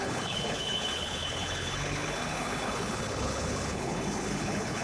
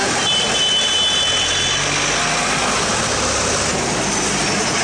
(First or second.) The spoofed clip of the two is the first